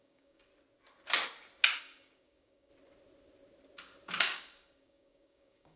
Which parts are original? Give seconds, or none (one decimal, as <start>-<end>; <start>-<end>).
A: 0.5-1.8; 2.7-4.2